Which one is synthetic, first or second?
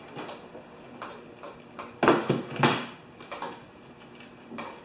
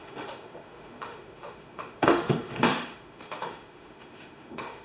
second